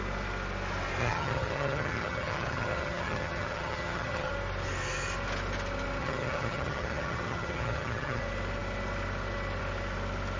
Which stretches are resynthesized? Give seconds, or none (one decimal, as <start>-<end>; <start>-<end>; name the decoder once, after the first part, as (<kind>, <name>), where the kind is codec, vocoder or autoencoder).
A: 1.0-4.3 (vocoder, HiFi-GAN); 6.0-8.2